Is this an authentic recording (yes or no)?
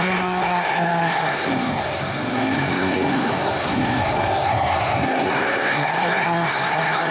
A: no